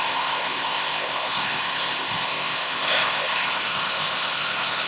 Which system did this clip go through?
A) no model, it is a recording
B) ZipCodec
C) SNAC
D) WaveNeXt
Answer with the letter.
B